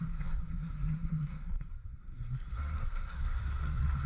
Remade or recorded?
remade